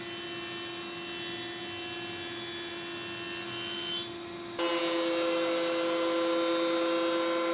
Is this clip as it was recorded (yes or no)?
yes